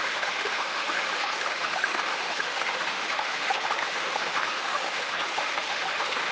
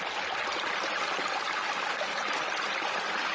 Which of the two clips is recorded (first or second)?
second